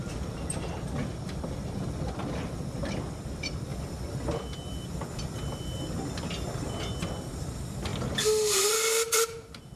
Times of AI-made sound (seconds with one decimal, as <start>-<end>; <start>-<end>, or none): none